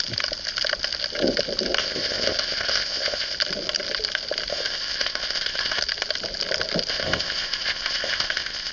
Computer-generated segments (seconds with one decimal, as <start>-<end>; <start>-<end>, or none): 1.8-3.3; 4.5-5.8; 6.9-8.7

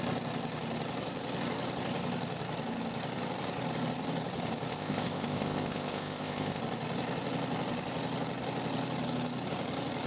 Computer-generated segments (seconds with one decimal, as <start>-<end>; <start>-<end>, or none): 4.7-6.6

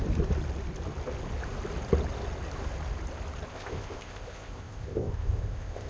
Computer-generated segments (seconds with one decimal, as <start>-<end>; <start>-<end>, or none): 3.5-5.9